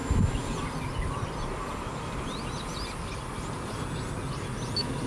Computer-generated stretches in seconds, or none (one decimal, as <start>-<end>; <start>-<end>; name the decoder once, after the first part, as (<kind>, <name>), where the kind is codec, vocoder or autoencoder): none